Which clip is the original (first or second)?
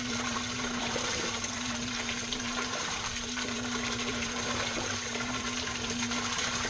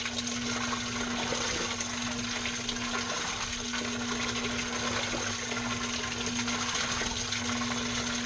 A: second